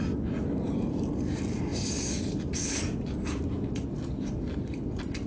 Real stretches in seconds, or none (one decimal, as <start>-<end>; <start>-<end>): 0.0-5.3